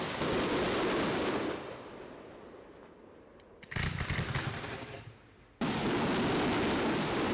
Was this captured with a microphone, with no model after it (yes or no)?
yes